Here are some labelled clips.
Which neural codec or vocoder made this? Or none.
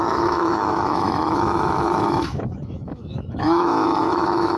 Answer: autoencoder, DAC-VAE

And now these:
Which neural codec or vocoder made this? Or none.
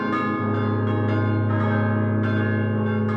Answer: none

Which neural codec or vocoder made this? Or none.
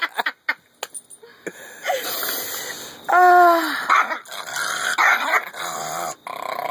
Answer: none